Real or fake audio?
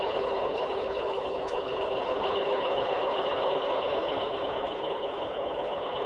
fake